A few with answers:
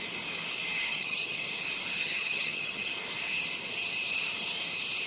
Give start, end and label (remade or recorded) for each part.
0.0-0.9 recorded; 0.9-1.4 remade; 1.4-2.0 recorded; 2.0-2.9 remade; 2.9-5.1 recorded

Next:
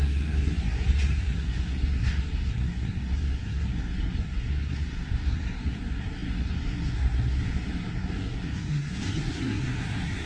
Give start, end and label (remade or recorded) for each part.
0.0-10.3 remade

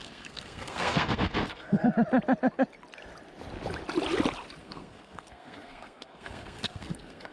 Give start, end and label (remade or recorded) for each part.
0.0-1.9 remade; 1.9-4.6 recorded; 4.6-7.3 remade

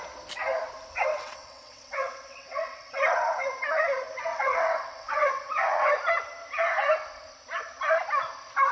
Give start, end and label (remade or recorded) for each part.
0.0-1.1 recorded; 1.1-2.9 remade; 2.9-4.3 recorded; 4.3-5.9 remade; 5.9-8.7 recorded

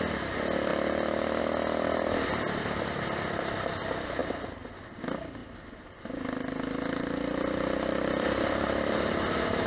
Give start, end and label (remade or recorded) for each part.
0.0-9.7 recorded